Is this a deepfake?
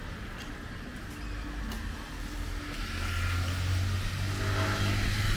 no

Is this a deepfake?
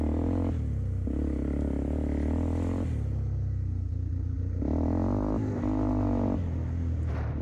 no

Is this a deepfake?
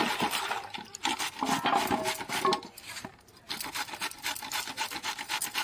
no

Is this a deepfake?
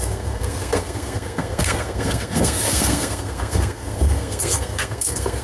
yes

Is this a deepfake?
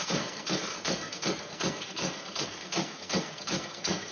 yes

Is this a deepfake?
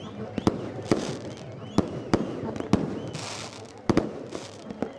no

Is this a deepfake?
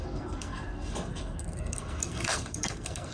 yes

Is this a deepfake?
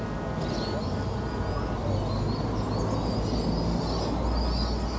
no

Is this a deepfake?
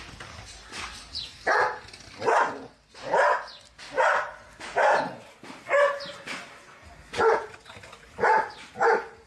no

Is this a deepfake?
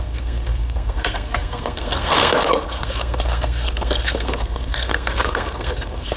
yes